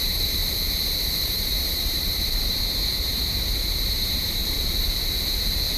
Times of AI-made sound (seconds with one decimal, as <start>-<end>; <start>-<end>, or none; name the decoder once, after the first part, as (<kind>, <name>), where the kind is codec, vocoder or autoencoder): 0.0-0.4 (vocoder, BigVGAN v2); 1.2-4.4

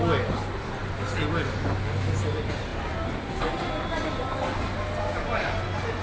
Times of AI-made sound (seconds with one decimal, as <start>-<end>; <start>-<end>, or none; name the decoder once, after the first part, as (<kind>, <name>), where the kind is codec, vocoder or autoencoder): none

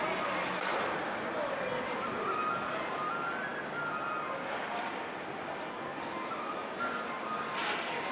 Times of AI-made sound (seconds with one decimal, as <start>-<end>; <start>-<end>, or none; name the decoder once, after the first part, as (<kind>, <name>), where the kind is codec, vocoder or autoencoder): none

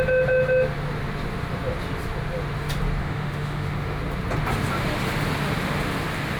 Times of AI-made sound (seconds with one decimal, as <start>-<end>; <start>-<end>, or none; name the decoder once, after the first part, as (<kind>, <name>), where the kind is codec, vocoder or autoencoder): 3.0-4.0 (autoencoder, DAC-VAE)

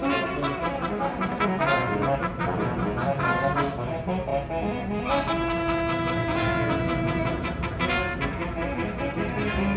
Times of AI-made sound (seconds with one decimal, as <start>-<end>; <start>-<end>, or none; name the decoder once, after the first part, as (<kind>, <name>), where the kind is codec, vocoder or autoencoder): 6.2-7.8 (vocoder, Vocos)

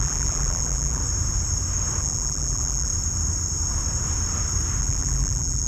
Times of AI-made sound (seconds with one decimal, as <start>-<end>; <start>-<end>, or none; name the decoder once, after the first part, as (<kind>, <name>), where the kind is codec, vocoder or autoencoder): 0.0-1.0 (vocoder, BigVGAN v2); 2.0-2.9; 4.8-5.7

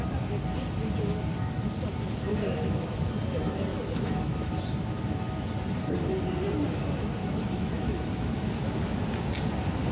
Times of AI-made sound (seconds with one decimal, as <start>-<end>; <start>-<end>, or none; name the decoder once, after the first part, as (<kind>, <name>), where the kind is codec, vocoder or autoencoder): 2.3-3.1 (autoencoder, DAC-VAE); 3.7-4.6; 7.2-8.9

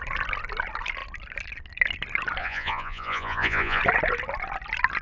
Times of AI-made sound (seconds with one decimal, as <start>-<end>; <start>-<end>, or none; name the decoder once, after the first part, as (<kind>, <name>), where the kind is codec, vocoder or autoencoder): 2.4-3.8 (vocoder, Vocos)